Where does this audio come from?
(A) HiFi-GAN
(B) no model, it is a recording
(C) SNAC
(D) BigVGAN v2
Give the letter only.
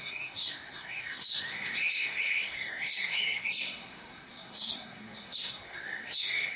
C